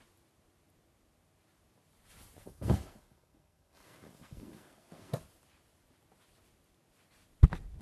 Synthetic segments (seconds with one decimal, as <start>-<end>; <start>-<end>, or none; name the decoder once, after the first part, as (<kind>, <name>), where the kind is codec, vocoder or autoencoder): 2.4-5.2 (codec, SNAC)